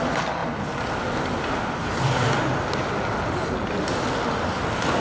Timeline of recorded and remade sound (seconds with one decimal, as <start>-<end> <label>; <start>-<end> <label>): 0.0-5.0 recorded